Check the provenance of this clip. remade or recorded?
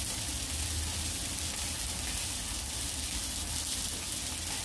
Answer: recorded